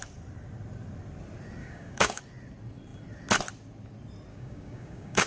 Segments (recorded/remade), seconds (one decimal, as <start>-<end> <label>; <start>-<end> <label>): 0.0-1.6 recorded; 1.6-2.2 remade; 2.2-4.3 recorded; 4.3-5.3 remade